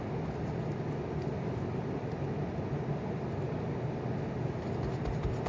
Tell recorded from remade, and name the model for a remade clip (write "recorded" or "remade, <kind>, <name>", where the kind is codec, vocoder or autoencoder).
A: recorded